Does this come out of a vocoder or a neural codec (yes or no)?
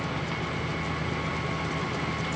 no